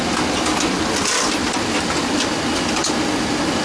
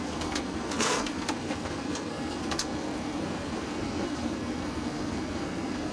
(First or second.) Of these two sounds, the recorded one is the first